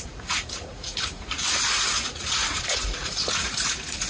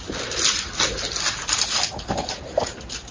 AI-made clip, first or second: first